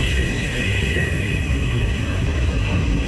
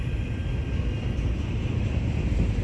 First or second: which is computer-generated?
first